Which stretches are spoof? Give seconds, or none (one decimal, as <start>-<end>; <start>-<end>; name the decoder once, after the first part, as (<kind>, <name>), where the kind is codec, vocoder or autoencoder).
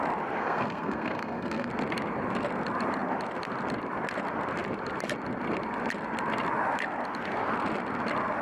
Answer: 0.4-1.7 (codec, SNAC)